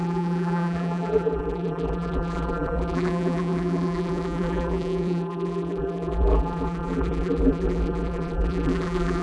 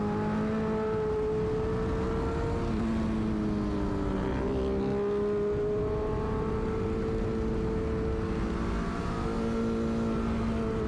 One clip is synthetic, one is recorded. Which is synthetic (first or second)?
first